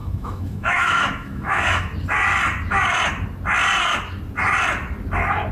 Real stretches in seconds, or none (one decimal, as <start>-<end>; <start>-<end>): 1.9-5.5